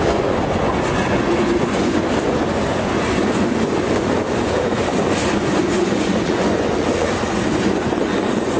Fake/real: fake